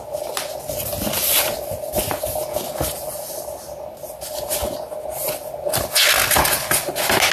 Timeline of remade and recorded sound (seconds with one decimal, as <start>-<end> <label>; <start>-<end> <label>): 0.0-7.3 recorded